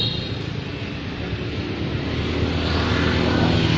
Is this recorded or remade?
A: recorded